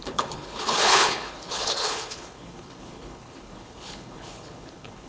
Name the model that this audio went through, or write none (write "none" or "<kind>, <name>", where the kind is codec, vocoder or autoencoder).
codec, HILCodec